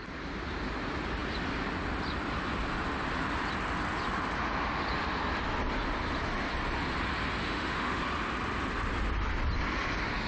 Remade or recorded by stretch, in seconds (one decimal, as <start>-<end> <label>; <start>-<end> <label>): 0.0-7.4 recorded; 7.4-8.0 remade; 8.0-10.3 recorded